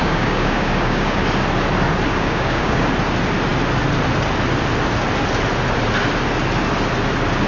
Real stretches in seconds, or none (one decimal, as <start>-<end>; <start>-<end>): 1.2-2.1; 2.9-7.5